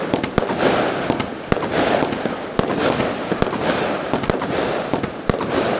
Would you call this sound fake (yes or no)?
no